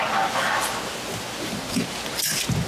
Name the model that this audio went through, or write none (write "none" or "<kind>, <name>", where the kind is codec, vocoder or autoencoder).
none